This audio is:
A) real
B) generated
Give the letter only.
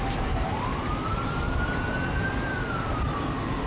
A